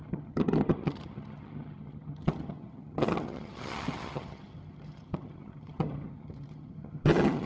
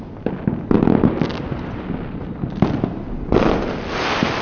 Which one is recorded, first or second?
second